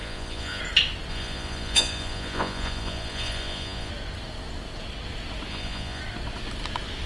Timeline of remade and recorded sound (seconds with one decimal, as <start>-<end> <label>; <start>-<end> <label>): 0.0-0.6 remade; 0.6-1.1 recorded; 1.1-3.9 remade; 3.9-5.5 recorded; 5.5-6.0 remade; 6.0-7.1 recorded